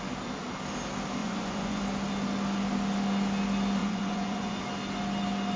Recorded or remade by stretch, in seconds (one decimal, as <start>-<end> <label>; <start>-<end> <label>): 0.0-1.2 recorded; 1.2-1.8 remade; 1.8-3.8 recorded; 3.8-4.6 remade; 4.6-5.6 recorded